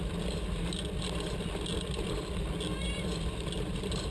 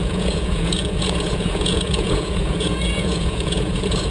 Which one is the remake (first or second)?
second